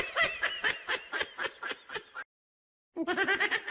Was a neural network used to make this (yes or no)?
no